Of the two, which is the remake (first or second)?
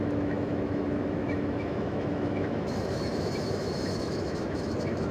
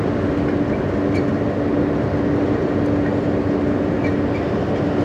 first